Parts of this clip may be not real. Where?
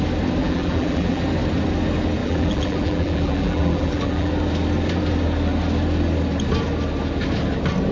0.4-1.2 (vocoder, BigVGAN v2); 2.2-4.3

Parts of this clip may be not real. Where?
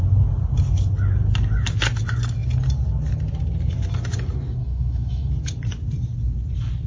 4.6-5.3 (autoencoder, DAC-VAE)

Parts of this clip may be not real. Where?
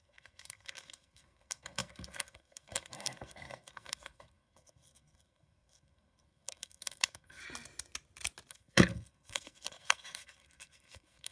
0.0-7.4 (codec, SNAC); 8.5-11.3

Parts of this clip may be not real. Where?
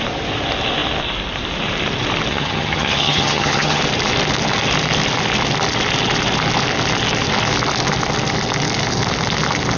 2.3-3.8 (vocoder, HiFi-GAN)